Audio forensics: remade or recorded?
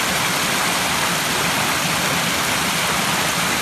recorded